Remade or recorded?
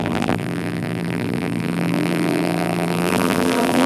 remade